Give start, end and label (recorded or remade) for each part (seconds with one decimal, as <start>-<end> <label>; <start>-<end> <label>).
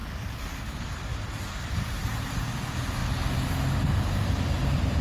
0.0-0.6 recorded; 0.6-1.1 remade; 1.1-1.7 recorded; 1.7-3.0 remade; 3.0-3.9 recorded; 3.9-5.0 remade